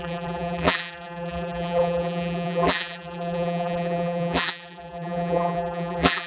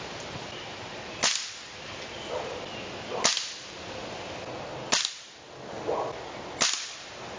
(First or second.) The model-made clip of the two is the first